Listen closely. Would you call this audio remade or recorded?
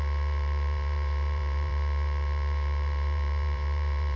remade